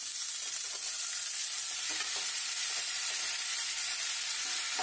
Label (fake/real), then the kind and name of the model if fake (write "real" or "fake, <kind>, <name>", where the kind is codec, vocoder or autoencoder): real